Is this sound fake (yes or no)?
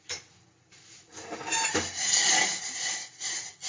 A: no